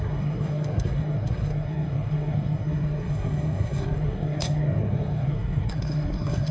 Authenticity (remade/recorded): remade